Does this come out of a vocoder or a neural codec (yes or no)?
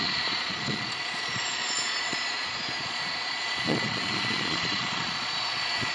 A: yes